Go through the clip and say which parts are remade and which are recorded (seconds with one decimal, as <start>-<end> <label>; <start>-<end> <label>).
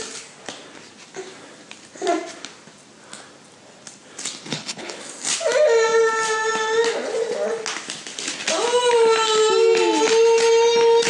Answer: 0.0-4.5 recorded; 4.5-5.0 remade; 5.0-11.1 recorded